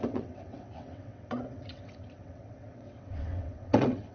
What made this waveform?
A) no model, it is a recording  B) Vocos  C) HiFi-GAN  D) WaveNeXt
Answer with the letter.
D